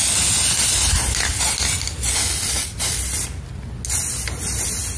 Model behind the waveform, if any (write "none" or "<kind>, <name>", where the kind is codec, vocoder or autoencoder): none